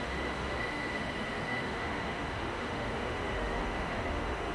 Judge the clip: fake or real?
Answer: fake